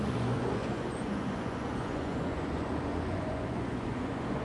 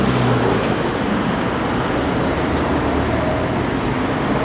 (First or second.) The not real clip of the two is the first